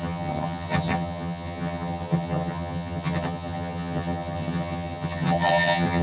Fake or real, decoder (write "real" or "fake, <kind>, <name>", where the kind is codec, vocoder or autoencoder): fake, vocoder, HiFi-GAN